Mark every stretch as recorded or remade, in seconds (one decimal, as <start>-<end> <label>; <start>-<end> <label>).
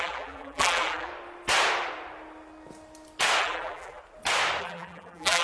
0.0-1.1 remade; 1.1-3.4 recorded; 3.4-4.0 remade; 4.0-4.6 recorded; 4.6-5.4 remade